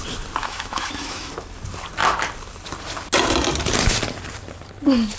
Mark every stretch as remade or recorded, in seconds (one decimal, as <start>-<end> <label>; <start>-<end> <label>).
0.0-0.4 recorded; 0.4-1.3 remade; 1.3-5.2 recorded